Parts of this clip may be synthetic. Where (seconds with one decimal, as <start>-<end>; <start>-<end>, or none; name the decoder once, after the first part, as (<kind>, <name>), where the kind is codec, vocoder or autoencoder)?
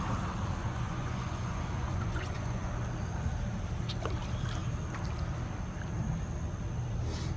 0.6-2.7 (vocoder, Vocos)